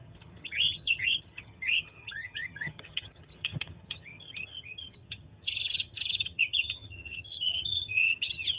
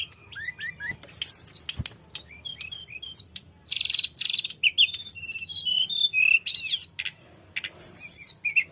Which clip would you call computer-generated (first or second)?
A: first